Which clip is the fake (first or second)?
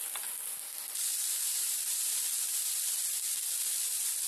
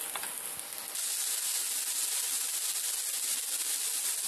first